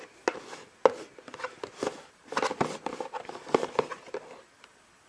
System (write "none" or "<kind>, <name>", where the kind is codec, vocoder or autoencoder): none